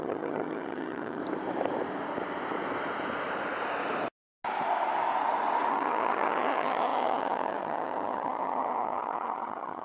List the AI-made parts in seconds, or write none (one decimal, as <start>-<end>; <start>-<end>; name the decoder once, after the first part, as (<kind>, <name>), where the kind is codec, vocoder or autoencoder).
0.0-1.2 (vocoder, HiFi-GAN); 5.7-9.8